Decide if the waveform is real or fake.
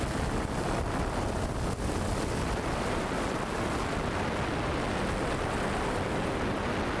real